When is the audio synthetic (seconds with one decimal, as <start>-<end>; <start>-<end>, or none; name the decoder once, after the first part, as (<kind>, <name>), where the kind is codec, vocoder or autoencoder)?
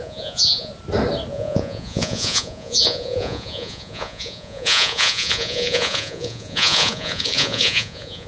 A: 0.0-0.7 (vocoder, Vocos); 1.3-8.3